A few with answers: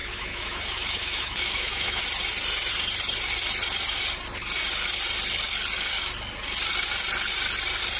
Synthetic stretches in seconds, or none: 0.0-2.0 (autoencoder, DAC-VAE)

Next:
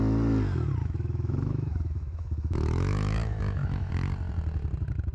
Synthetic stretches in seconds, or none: 0.8-3.9 (autoencoder, DAC-VAE)